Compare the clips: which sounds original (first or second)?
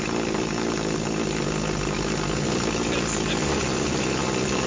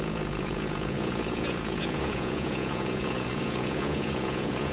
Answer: first